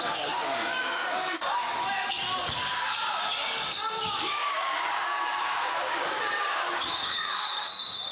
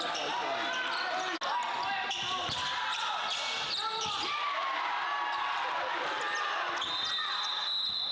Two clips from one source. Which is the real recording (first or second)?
second